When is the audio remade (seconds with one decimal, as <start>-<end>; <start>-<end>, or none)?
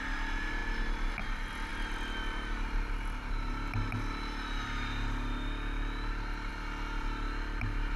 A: none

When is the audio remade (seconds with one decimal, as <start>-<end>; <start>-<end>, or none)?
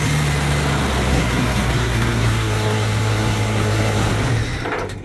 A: 1.1-4.1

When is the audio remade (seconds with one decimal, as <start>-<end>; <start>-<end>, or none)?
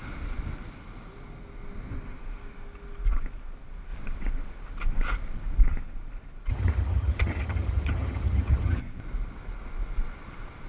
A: 6.5-8.8